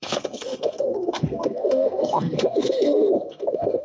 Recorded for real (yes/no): no